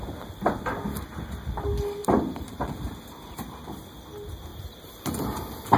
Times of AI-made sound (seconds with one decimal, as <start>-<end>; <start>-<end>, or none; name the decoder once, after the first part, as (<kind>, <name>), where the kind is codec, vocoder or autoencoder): 2.0-2.9 (vocoder, BigVGAN v2); 4.5-5.8